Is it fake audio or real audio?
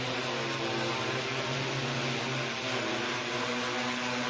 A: real